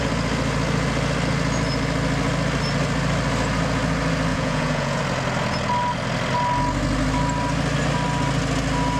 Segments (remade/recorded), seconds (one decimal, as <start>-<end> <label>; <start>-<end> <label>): 0.0-4.3 recorded; 4.3-5.0 remade; 5.0-9.0 recorded